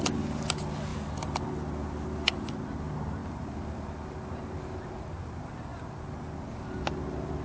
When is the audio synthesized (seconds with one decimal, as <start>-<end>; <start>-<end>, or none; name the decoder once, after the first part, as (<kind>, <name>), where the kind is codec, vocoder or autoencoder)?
none